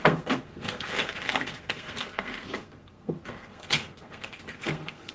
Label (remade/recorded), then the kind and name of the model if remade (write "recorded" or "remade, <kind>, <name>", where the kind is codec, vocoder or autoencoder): remade, codec, SNAC